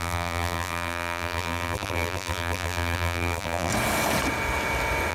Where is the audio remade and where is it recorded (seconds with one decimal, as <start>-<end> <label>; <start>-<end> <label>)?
0.0-3.7 remade; 3.7-5.1 recorded